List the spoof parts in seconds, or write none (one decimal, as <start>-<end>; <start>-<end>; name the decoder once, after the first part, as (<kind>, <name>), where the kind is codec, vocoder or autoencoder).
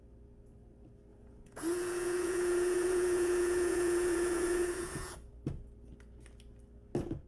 1.1-5.1 (vocoder, Vocos)